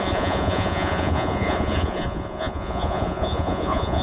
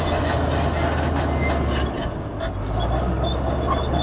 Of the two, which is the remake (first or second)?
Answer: first